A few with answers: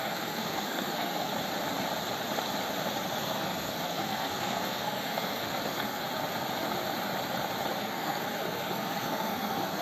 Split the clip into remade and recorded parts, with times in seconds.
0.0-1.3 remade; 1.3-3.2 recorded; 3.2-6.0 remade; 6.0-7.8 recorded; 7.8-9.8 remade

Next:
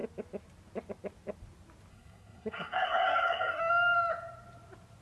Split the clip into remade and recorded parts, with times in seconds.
0.0-1.9 recorded; 1.9-3.6 remade; 3.6-5.0 recorded

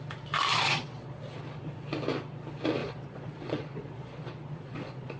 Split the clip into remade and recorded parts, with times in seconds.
0.0-0.5 recorded; 0.5-1.2 remade; 1.2-2.8 recorded; 2.8-5.2 remade

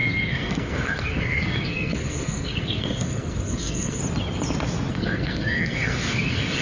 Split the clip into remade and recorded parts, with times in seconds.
0.0-4.0 remade; 4.0-4.9 recorded; 4.9-6.6 remade